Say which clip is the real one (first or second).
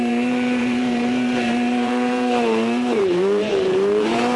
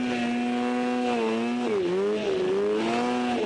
second